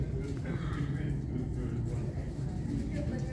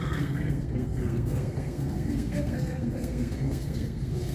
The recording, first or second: first